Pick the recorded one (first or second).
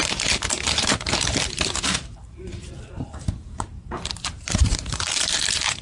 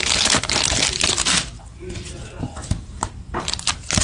second